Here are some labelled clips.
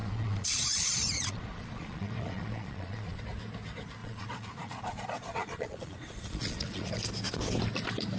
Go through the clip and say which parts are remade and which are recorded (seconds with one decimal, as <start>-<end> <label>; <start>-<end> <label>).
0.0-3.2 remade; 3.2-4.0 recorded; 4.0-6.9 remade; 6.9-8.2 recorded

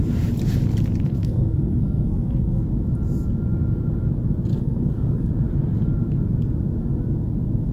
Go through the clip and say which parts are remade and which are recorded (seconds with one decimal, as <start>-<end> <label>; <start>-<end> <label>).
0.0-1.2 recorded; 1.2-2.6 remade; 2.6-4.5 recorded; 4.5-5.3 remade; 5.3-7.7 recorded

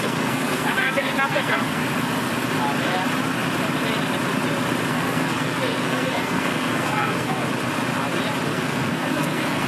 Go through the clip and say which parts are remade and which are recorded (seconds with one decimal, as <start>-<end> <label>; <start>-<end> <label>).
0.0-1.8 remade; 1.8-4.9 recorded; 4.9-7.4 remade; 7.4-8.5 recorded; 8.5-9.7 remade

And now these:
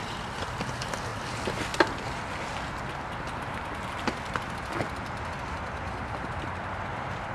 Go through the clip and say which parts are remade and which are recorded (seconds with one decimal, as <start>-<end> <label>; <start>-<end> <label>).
0.0-7.3 recorded

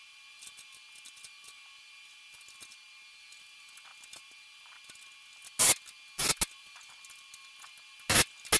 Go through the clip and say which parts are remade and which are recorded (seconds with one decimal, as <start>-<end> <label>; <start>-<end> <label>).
0.0-8.6 recorded

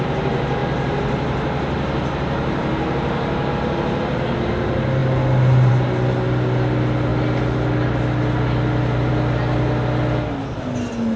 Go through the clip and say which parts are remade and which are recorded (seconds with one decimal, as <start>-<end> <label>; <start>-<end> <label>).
0.0-11.2 recorded